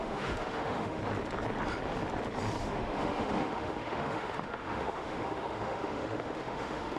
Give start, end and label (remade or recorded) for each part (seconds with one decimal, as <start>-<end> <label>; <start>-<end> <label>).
0.0-1.0 remade; 1.0-2.6 recorded; 2.6-7.0 remade